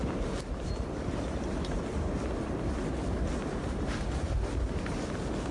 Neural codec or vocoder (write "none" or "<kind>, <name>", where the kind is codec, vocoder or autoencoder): none